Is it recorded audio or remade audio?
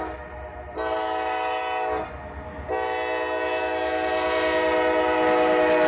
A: recorded